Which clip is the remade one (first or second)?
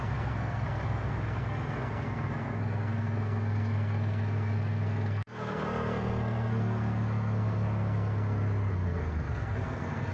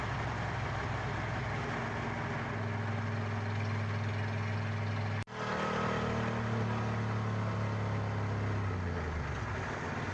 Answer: first